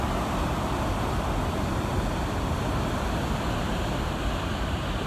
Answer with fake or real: real